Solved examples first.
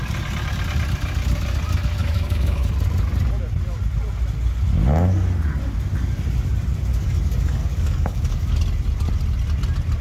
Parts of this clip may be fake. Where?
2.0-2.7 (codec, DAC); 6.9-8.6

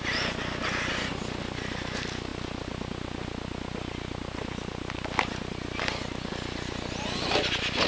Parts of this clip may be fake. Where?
none

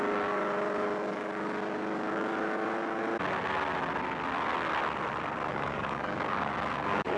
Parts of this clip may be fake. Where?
0.0-3.1 (codec, DAC); 5.5-7.2

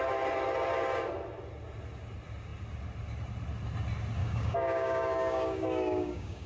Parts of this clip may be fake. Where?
4.2-6.5 (codec, DAC)